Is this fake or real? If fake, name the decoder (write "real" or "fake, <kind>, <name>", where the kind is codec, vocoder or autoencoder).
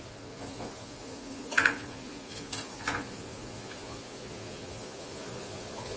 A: fake, vocoder, Vocos